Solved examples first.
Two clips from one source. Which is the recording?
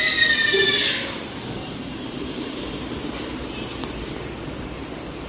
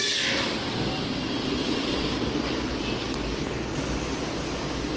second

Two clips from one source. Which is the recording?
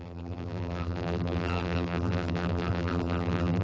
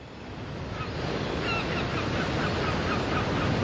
second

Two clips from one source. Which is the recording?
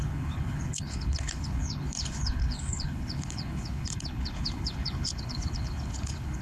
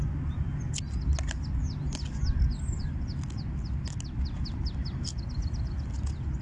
second